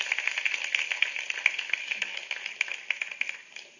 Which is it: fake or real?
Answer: real